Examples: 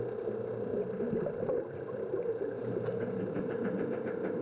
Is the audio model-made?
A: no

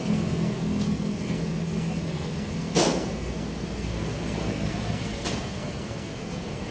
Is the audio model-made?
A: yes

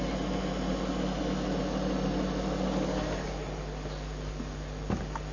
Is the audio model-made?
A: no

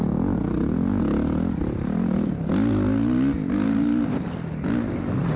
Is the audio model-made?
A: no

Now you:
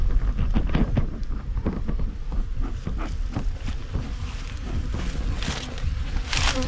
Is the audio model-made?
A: no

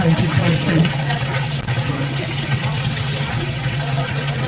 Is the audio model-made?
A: yes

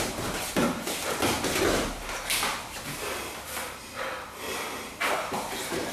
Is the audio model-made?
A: yes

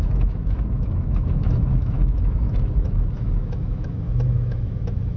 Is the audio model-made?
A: yes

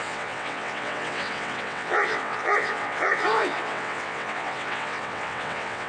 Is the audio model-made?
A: yes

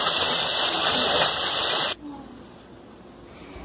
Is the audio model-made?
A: no